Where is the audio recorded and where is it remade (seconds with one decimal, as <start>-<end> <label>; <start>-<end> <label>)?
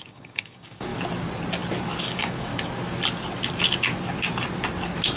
0.0-0.9 remade; 0.9-2.0 recorded; 2.0-2.5 remade; 2.5-5.2 recorded